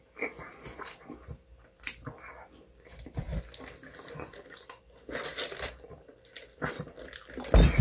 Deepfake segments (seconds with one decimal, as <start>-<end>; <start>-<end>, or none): none